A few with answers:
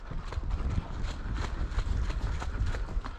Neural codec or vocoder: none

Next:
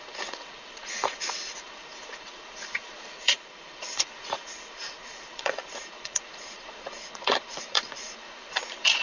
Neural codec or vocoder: vocoder, Vocos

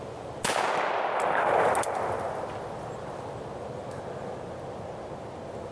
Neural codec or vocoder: none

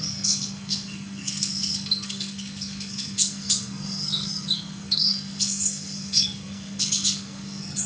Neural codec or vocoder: codec, SNAC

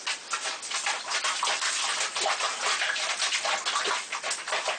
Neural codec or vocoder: none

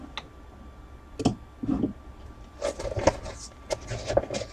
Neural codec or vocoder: none